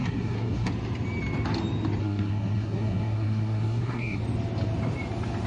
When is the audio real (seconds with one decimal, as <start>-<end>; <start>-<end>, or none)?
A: 0.7-2.0; 4.2-5.5